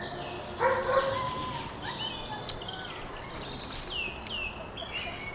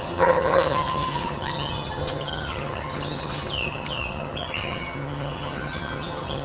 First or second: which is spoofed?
second